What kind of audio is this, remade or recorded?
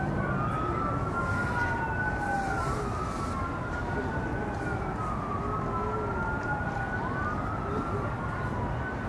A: recorded